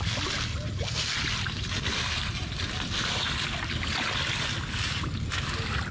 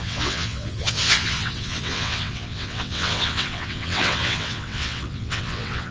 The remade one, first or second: second